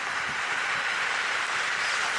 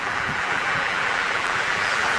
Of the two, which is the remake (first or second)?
second